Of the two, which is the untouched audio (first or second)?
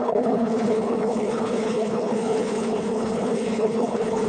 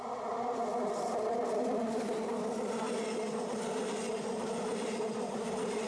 second